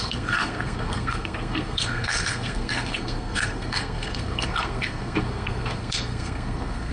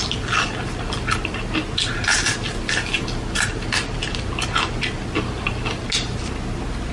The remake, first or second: first